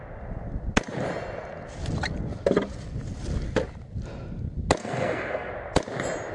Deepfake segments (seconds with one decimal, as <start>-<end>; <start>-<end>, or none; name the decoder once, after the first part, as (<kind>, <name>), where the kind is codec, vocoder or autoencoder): 4.8-5.5 (codec, SNAC)